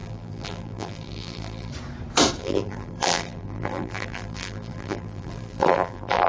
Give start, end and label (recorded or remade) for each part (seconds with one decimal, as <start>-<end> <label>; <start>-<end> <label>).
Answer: 0.0-1.7 remade; 1.7-2.4 recorded; 2.4-6.3 remade